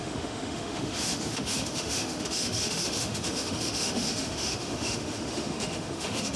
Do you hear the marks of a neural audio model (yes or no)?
yes